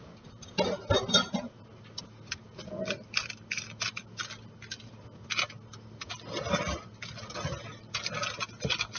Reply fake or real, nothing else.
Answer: real